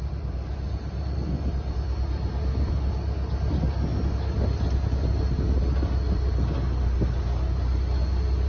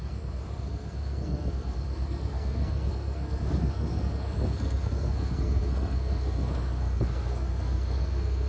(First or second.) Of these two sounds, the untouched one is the first